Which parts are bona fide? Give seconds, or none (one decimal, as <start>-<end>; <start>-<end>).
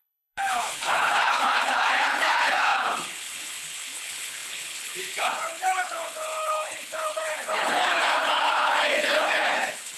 none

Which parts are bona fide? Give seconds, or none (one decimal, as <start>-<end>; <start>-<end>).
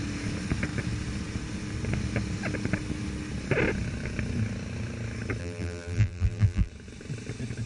0.0-5.4; 6.7-7.7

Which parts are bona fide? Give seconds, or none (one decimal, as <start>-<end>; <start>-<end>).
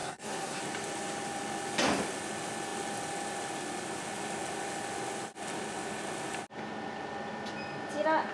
0.6-8.3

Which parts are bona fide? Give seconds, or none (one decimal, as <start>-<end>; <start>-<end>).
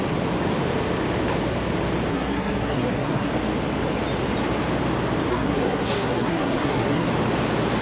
0.0-2.1; 3.3-5.3; 7.1-7.8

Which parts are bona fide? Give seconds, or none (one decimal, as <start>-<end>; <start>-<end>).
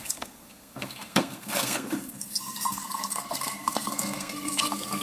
none